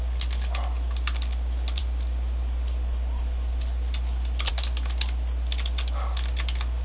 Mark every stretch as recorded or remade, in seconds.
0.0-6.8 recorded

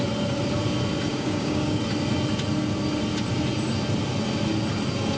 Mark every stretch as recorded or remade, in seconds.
0.0-1.1 recorded; 1.1-1.8 remade; 1.8-5.2 recorded

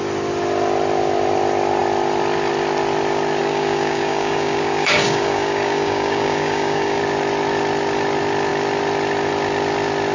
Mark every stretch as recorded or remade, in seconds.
0.0-3.4 recorded; 3.4-7.0 remade; 7.0-10.1 recorded

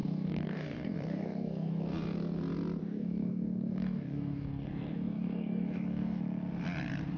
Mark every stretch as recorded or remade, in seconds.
0.0-1.8 remade; 1.8-2.8 recorded; 2.8-6.2 remade; 6.2-7.2 recorded

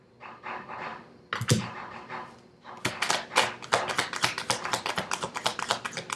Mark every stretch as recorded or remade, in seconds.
0.0-6.2 recorded